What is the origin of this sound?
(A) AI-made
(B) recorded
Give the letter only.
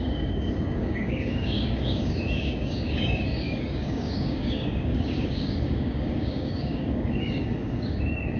A